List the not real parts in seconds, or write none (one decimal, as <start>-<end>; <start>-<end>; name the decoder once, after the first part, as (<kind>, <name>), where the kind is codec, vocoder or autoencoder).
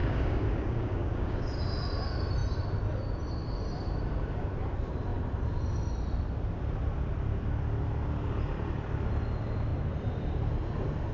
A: 0.0-1.5 (codec, DAC)